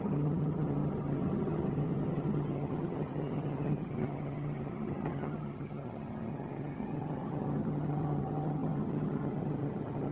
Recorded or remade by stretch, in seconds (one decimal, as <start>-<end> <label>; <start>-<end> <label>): 0.0-10.1 remade